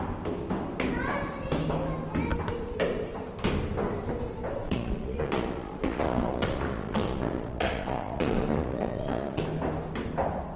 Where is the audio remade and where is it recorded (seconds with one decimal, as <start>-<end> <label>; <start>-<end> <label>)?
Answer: 0.0-4.6 recorded; 4.6-9.4 remade; 9.4-10.6 recorded